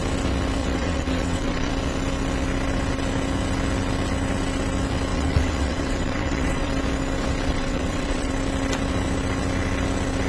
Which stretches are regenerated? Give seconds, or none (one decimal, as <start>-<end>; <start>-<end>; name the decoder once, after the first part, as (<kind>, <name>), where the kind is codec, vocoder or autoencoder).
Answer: 0.6-1.7 (vocoder, WaveNeXt); 5.1-6.7; 7.5-8.3